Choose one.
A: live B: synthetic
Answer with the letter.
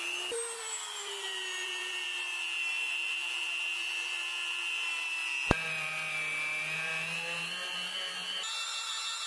B